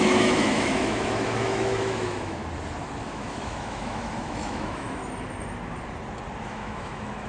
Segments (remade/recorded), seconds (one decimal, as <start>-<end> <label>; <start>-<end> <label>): 0.0-2.4 remade; 2.4-3.0 recorded; 3.0-5.0 remade; 5.0-6.4 recorded; 6.4-7.3 remade